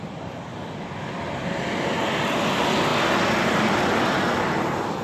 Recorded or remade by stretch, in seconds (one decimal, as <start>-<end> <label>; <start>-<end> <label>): 0.0-5.0 recorded

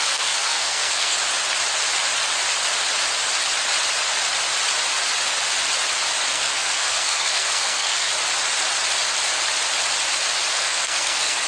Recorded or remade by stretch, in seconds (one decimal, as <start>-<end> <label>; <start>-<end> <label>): 0.0-1.2 remade; 1.2-6.3 recorded; 6.3-8.1 remade; 8.1-10.5 recorded; 10.5-11.5 remade

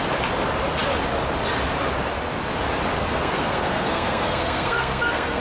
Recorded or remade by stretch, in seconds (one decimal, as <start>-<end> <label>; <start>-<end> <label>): 0.0-3.0 recorded; 3.0-5.4 remade

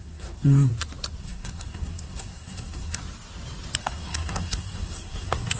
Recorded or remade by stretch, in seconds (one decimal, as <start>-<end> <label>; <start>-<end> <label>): 0.0-0.7 remade; 0.7-1.2 recorded; 1.2-3.0 remade; 3.0-3.8 recorded; 3.8-5.6 remade

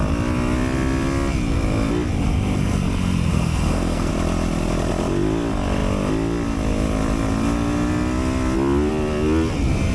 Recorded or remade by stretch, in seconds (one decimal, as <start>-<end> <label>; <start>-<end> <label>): 0.0-3.3 recorded; 3.3-4.1 remade; 4.1-9.9 recorded

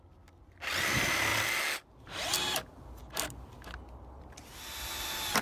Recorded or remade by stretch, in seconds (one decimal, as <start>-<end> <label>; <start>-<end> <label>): 0.0-5.4 recorded

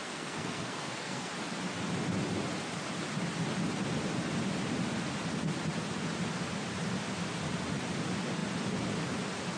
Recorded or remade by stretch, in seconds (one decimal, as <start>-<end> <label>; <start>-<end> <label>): 0.0-1.3 remade; 1.3-9.6 recorded